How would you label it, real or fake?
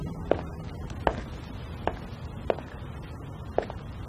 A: real